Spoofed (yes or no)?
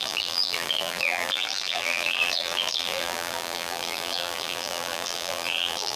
yes